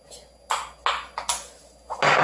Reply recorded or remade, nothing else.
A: recorded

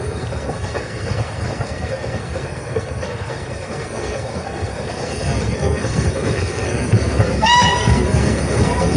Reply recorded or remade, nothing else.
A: remade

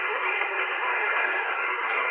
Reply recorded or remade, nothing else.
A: remade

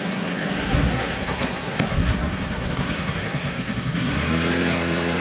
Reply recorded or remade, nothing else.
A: remade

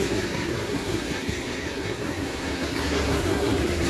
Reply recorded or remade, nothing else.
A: remade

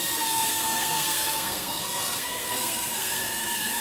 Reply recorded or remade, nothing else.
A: remade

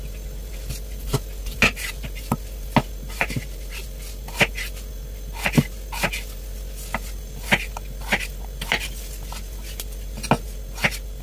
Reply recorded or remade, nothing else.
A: recorded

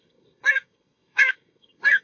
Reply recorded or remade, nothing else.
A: remade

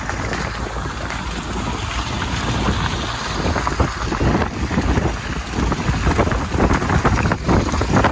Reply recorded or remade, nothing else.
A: recorded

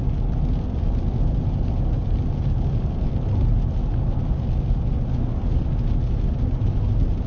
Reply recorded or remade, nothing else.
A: recorded